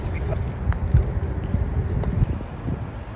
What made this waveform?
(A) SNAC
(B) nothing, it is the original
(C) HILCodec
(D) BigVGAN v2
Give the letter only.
B